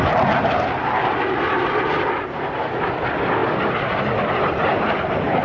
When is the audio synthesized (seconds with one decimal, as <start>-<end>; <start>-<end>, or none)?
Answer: none